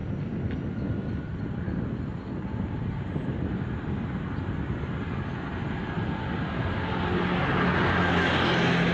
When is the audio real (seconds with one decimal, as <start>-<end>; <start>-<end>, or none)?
0.0-8.9